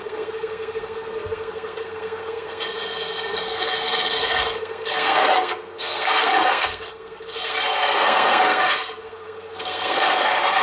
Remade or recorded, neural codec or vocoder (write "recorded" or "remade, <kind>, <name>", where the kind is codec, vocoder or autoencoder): remade, codec, SNAC